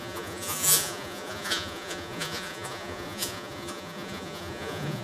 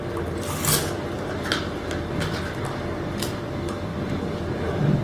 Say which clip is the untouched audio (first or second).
second